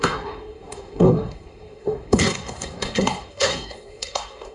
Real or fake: fake